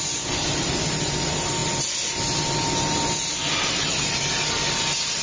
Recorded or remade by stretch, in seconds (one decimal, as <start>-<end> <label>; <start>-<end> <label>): 0.0-5.2 recorded

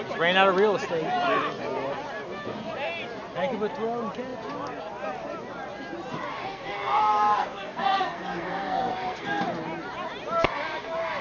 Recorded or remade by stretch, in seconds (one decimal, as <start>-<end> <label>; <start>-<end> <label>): 0.0-6.4 recorded; 6.4-9.4 remade; 9.4-11.2 recorded

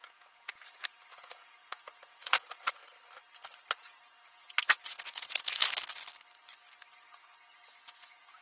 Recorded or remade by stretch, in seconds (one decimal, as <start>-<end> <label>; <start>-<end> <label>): 0.0-2.8 remade; 2.8-3.8 recorded; 3.8-5.6 remade; 5.6-6.9 recorded; 6.9-8.4 remade

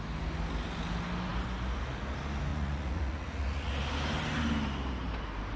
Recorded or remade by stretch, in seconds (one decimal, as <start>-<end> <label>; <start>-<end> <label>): 0.0-2.5 recorded; 2.5-3.7 remade; 3.7-5.6 recorded

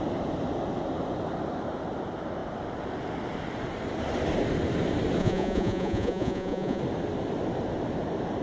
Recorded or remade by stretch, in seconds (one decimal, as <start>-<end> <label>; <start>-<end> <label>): 0.0-5.2 recorded; 5.2-6.8 remade; 6.8-8.4 recorded